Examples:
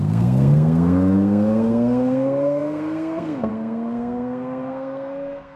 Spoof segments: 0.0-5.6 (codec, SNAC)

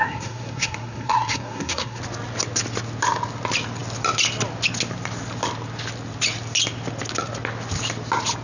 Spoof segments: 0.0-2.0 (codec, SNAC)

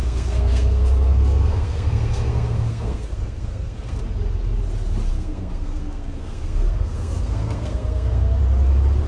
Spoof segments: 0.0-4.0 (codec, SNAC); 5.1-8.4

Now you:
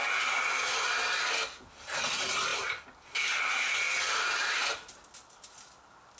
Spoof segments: none